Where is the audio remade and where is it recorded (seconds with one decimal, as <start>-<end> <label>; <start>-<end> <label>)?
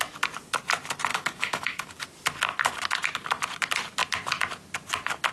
0.0-1.1 recorded; 1.1-1.9 remade; 1.9-5.3 recorded